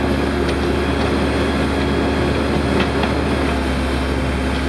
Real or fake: real